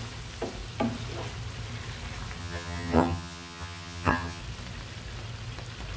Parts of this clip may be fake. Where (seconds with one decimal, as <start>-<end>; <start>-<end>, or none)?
2.4-4.4